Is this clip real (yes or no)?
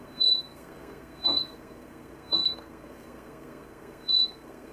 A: no